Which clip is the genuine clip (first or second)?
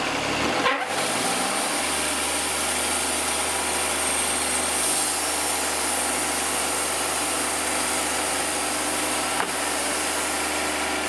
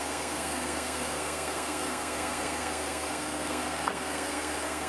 first